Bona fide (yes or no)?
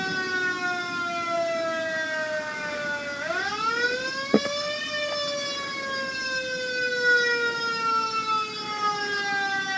yes